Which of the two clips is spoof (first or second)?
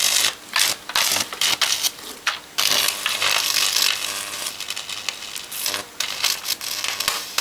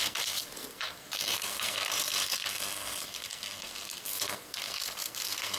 second